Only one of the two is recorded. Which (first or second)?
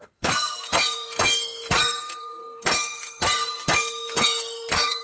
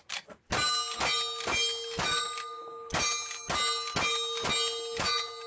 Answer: second